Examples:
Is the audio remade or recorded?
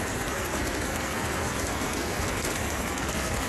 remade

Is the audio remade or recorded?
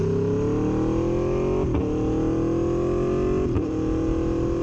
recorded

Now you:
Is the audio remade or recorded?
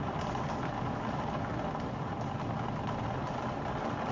recorded